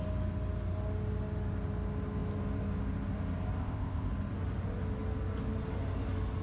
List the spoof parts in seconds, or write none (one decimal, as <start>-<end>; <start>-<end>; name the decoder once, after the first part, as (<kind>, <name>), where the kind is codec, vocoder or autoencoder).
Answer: 3.6-4.1 (codec, ZipCodec)